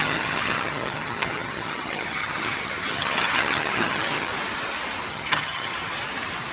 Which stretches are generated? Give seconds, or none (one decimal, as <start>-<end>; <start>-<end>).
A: 0.0-4.3; 5.1-5.7